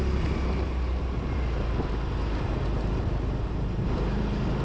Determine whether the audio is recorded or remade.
recorded